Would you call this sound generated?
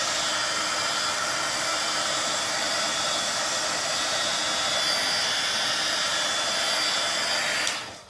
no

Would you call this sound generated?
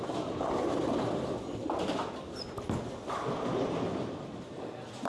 no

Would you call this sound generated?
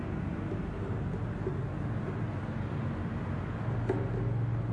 no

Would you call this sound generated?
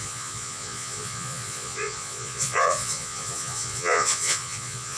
yes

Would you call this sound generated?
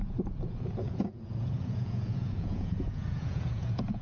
yes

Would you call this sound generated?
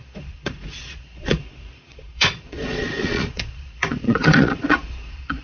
yes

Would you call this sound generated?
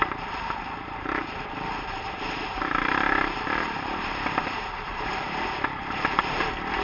yes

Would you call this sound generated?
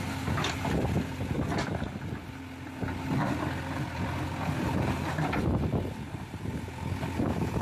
no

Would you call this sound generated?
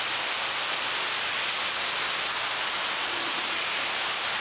no